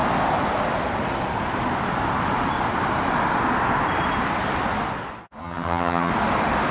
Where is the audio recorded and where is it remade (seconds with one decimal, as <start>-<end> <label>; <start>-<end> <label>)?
0.0-5.4 recorded; 5.4-6.1 remade; 6.1-6.7 recorded